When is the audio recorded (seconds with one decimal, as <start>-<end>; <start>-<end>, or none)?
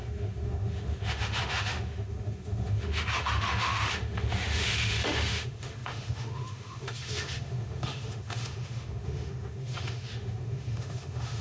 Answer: none